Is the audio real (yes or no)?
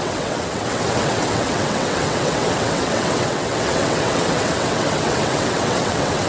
no